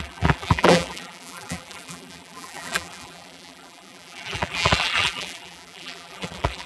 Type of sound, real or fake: fake